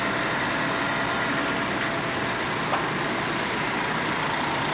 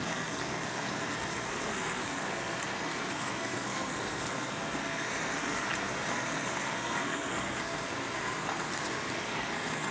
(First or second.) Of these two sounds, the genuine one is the first